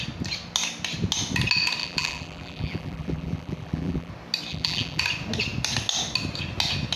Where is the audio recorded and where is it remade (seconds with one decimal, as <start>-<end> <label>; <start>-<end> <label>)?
0.0-1.8 recorded; 1.8-4.1 remade; 4.1-4.5 recorded; 4.5-5.0 remade; 5.0-7.0 recorded